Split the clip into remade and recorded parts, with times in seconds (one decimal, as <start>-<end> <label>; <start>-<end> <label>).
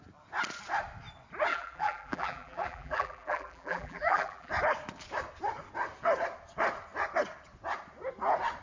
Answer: 0.0-1.5 recorded; 1.5-4.5 remade; 4.5-8.6 recorded